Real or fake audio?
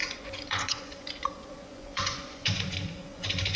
fake